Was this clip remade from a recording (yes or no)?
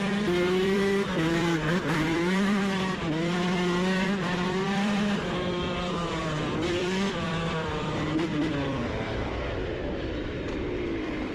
yes